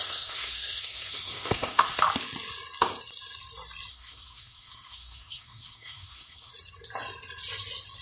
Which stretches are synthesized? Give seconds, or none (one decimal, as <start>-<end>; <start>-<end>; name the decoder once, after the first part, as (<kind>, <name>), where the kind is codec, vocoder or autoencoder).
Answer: 0.0-2.0 (codec, SNAC); 3.9-6.5